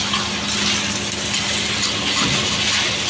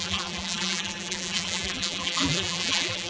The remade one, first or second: second